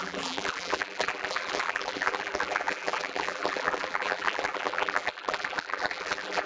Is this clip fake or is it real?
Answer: fake